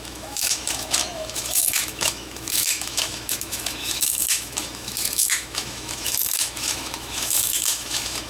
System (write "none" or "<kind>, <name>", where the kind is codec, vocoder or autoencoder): autoencoder, DAC-VAE